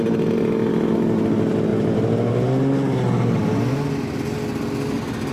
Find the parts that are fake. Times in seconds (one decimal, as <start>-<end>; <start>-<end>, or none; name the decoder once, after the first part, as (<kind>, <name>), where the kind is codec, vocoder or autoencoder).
none